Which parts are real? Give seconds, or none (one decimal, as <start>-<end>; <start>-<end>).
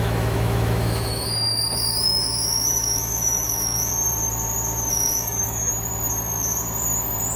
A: 3.9-4.9; 5.7-7.4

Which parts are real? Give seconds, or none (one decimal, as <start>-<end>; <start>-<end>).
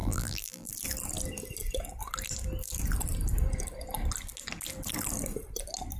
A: 0.7-6.0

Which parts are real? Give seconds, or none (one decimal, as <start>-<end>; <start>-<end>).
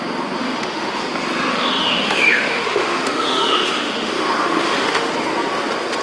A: 0.0-0.4; 1.0-1.5; 5.1-6.0